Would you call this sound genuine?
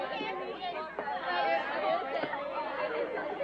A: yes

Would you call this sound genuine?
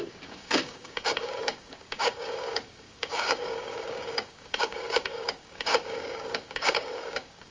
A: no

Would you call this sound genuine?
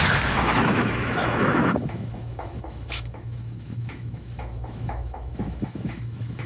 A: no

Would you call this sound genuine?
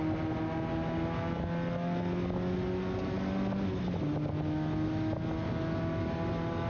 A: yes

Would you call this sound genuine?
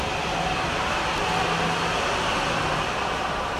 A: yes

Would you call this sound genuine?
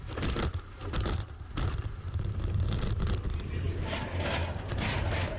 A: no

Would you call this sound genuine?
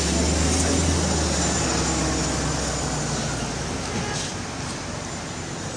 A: yes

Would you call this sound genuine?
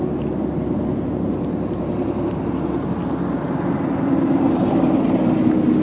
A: yes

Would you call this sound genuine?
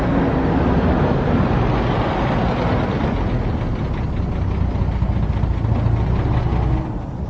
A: yes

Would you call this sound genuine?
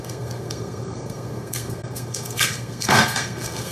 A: no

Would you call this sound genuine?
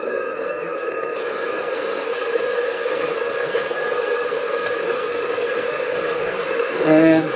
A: no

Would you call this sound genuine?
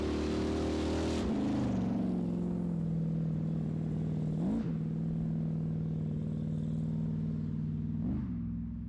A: yes